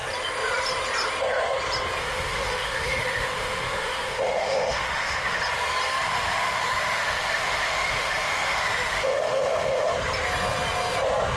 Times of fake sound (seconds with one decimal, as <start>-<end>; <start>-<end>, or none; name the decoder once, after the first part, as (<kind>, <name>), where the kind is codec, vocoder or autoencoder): 2.0-5.4 (autoencoder, DAC-VAE); 5.9-9.9